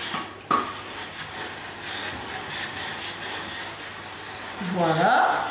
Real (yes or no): yes